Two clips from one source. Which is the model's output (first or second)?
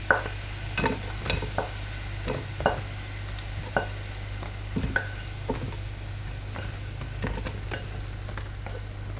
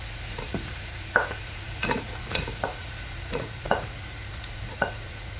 second